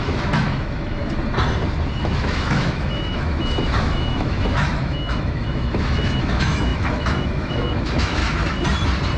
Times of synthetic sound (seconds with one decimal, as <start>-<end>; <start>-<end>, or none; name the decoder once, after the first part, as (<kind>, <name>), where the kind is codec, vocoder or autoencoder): 0.0-1.0 (autoencoder, DAC-VAE); 2.0-8.2